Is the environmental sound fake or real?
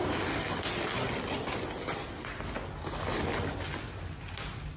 real